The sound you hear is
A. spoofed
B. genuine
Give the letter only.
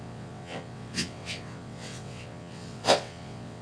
A